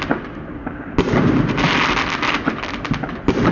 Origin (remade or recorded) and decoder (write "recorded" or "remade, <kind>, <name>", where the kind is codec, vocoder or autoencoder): recorded